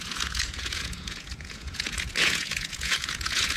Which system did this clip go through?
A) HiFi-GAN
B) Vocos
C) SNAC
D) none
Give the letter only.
B